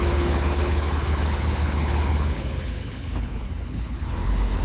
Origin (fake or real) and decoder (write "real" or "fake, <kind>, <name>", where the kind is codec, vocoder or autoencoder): fake, codec, HILCodec